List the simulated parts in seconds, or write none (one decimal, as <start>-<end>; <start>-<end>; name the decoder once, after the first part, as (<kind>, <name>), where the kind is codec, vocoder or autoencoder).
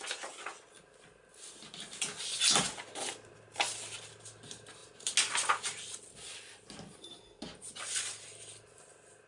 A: none